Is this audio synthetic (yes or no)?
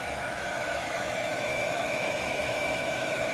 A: yes